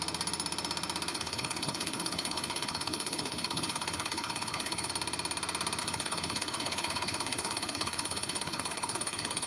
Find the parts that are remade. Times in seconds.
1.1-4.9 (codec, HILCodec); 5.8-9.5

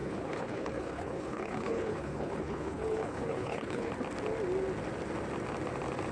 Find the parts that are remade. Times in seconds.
0.0-3.9 (codec, HILCodec)

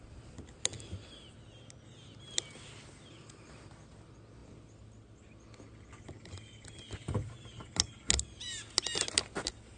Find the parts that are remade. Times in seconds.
none

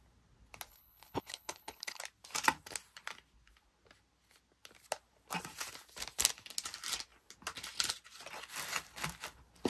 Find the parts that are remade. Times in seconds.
0.7-2.0 (codec, HILCodec)

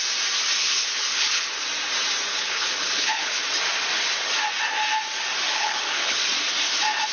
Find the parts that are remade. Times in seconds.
0.6-1.6 (codec, HILCodec); 2.3-3.4; 5.5-6.2